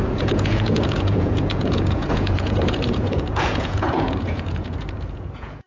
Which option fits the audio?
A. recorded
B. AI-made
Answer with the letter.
B